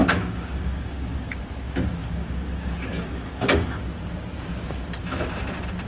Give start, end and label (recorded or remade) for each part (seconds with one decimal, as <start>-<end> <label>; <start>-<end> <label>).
0.0-1.4 remade; 1.4-2.0 recorded; 2.0-3.8 remade; 3.8-5.9 recorded

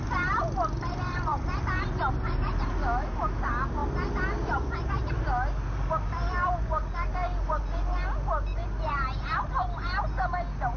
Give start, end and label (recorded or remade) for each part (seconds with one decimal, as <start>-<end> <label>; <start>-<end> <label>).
0.0-2.8 recorded; 2.8-3.4 remade; 3.4-10.8 recorded